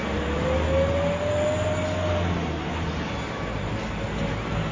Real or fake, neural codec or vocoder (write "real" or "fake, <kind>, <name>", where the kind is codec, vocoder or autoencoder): real